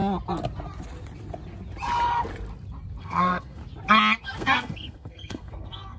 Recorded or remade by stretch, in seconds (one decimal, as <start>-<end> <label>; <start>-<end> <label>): 0.0-3.0 recorded; 3.0-3.6 remade; 3.6-4.2 recorded; 4.2-6.0 remade